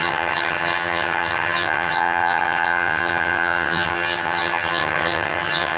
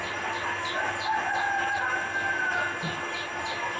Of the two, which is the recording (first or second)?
second